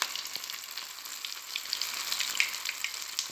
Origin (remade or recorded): recorded